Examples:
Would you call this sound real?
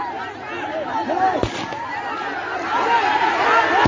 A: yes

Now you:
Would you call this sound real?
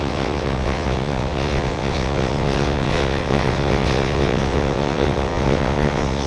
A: no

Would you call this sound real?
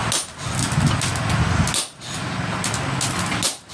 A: yes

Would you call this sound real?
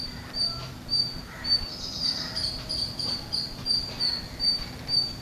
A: no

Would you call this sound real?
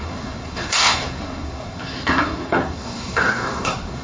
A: no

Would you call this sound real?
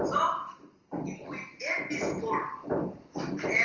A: yes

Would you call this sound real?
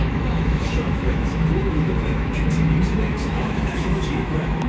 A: no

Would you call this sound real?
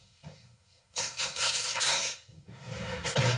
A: no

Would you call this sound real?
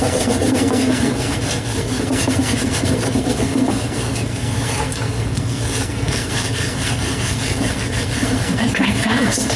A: no